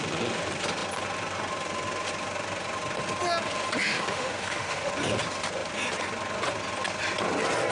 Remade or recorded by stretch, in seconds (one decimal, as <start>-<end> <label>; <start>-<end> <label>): 0.0-3.8 recorded; 3.8-4.9 remade; 4.9-7.7 recorded